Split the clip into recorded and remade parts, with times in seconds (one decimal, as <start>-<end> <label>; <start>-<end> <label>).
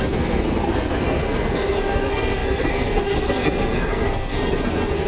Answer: 0.0-5.1 remade